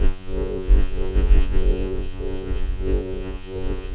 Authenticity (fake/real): fake